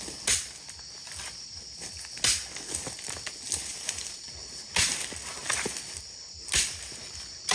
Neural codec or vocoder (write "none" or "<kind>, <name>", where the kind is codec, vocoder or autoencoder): none